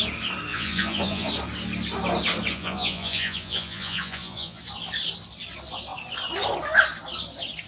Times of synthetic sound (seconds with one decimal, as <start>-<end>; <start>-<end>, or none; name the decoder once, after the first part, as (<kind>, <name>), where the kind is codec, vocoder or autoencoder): 0.5-1.3 (vocoder, Vocos); 2.5-4.6